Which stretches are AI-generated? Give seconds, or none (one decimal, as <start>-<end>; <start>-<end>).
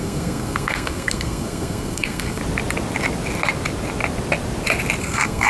0.0-2.4; 5.0-5.5